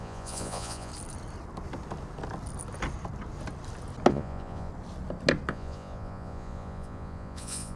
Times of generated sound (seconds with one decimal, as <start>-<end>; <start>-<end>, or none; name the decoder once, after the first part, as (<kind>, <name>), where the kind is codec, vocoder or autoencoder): 0.0-0.9 (vocoder, Vocos); 4.1-4.7; 5.5-7.8